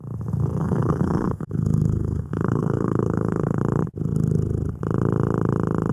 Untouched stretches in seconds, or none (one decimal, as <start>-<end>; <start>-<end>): 0.0-0.6; 3.6-5.9